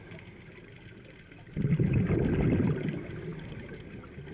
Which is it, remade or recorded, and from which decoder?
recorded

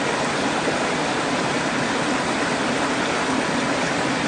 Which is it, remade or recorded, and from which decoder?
recorded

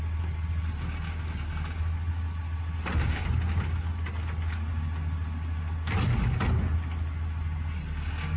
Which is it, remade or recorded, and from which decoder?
recorded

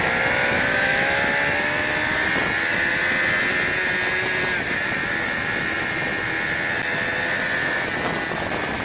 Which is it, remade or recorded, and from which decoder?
recorded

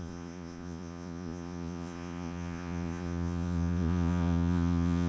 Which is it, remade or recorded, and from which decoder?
remade, vocoder, Vocos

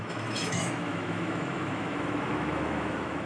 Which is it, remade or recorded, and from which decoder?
remade, autoencoder, DAC-VAE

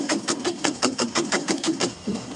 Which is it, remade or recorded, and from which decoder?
remade, codec, SNAC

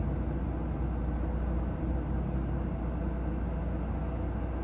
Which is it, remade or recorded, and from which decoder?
recorded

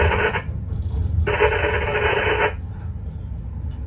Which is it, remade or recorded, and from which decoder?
recorded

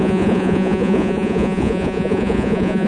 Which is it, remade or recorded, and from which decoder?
remade, vocoder, Vocos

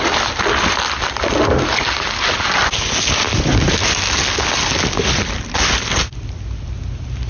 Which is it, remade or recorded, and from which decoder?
recorded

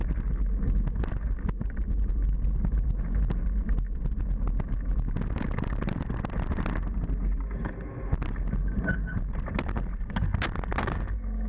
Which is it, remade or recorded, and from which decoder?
recorded